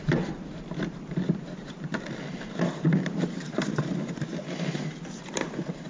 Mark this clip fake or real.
fake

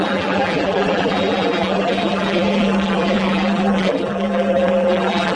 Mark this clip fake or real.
fake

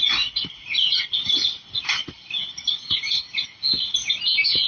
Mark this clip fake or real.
real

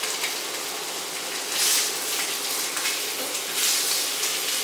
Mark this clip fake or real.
real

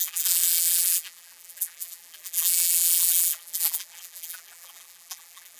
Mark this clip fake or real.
fake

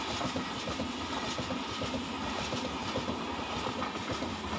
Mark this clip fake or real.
real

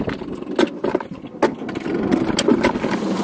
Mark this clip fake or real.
real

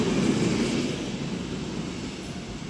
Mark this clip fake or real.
real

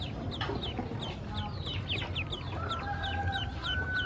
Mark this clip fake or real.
real